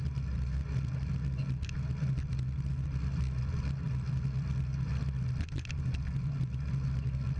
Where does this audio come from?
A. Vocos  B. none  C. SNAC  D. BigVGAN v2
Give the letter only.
B